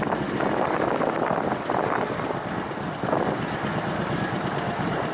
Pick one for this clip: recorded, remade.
recorded